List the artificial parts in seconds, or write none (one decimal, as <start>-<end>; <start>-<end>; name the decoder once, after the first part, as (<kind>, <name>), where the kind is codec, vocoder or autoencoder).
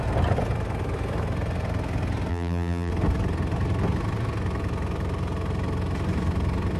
2.3-2.9 (vocoder, BigVGAN v2)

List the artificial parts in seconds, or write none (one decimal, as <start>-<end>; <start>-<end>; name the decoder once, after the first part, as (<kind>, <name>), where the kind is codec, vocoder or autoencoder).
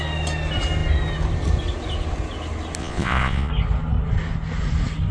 2.8-3.5 (vocoder, Vocos)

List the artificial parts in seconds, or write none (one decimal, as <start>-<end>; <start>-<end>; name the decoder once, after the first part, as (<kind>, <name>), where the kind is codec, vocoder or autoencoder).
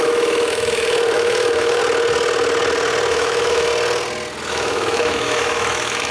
0.0-1.8 (autoencoder, DAC-VAE); 3.1-3.7; 4.5-6.1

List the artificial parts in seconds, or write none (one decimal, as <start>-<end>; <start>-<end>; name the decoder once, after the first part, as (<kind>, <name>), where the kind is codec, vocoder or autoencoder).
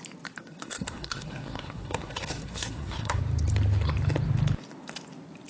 0.4-3.2 (codec, SNAC)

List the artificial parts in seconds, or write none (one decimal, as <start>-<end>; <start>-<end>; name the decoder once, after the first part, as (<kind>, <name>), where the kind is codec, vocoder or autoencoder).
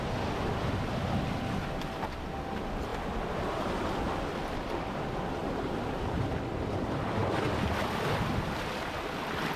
5.4-6.3 (vocoder, BigVGAN v2)